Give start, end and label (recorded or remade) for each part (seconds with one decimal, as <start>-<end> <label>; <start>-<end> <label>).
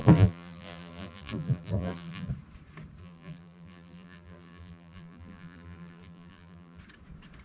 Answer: 0.0-2.3 remade; 2.3-3.0 recorded; 3.0-6.8 remade; 6.8-7.4 recorded